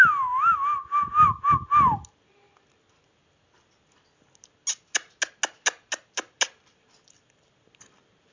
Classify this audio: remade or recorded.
recorded